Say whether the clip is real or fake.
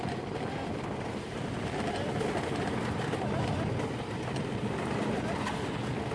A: real